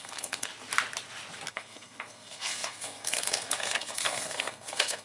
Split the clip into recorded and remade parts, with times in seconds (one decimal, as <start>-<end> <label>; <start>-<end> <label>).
0.0-0.5 remade; 0.5-1.5 recorded; 1.5-5.0 remade